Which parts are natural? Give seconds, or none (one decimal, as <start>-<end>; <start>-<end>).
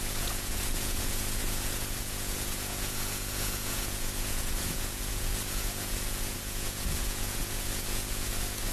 none